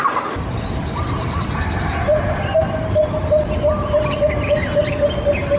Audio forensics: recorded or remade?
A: recorded